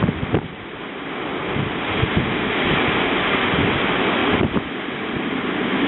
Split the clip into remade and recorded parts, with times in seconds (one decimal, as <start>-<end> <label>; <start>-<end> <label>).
0.0-5.9 recorded